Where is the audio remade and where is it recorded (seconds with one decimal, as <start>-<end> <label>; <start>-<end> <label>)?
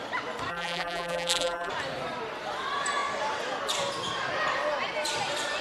0.0-0.5 recorded; 0.5-1.7 remade; 1.7-5.6 recorded